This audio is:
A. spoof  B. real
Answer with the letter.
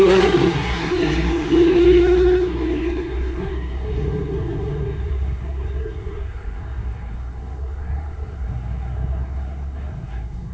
A